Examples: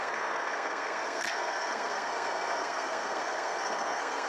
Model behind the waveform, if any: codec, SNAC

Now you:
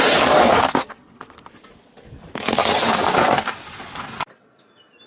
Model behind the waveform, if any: none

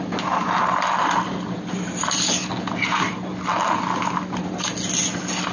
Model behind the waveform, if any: none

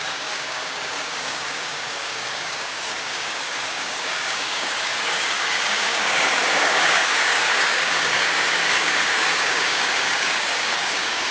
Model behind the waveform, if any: codec, DAC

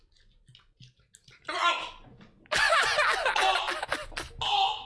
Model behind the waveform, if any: none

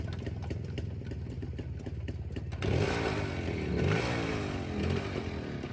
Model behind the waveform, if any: none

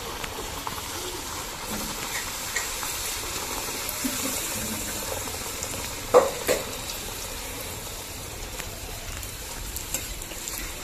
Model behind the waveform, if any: vocoder, BigVGAN v2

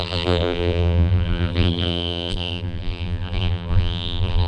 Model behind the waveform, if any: vocoder, BigVGAN v2